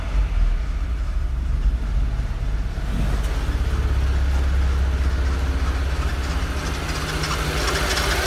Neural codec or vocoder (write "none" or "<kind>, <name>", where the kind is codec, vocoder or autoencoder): none